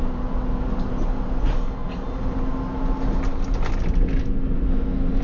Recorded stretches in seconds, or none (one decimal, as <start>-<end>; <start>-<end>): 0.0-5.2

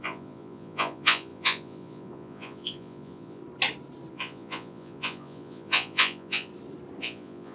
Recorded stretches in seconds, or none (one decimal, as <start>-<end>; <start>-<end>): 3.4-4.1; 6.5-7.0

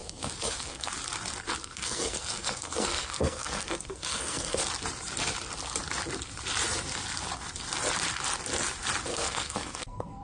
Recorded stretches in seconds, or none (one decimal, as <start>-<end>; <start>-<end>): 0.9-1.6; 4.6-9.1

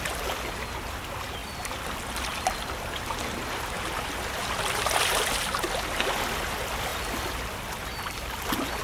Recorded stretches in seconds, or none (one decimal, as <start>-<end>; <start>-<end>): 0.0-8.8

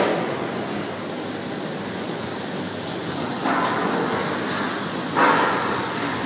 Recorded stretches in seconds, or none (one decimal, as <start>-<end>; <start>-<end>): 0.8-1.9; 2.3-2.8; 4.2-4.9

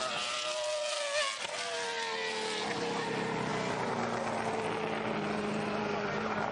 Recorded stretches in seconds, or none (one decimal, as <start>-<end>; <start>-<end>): 0.0-6.5